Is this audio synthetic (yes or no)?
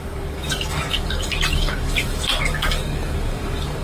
yes